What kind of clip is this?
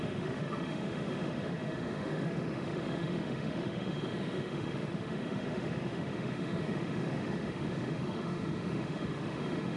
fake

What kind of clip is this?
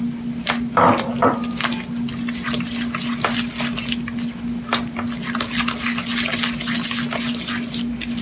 real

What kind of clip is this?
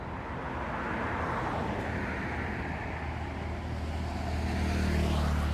real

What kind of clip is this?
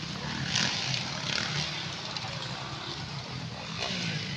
real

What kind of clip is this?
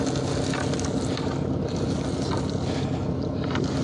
real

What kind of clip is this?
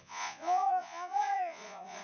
fake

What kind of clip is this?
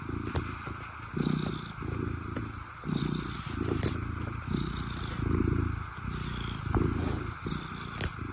real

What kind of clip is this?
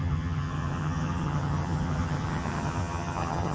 fake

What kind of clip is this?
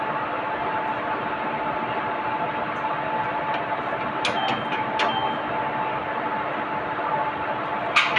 real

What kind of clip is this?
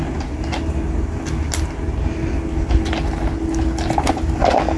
real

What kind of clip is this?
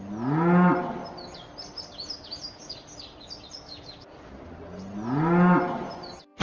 real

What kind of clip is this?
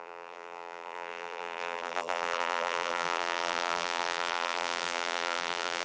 fake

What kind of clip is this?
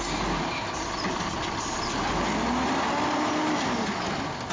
real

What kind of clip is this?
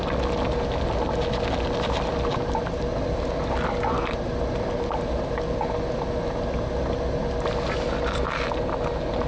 real